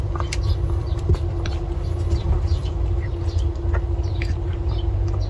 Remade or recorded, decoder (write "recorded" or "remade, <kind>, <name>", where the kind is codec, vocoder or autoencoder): recorded